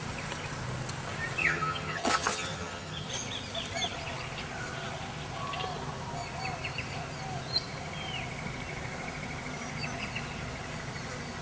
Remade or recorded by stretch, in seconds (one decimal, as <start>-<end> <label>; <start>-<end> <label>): 0.0-1.4 recorded; 1.4-3.1 remade; 3.1-11.4 recorded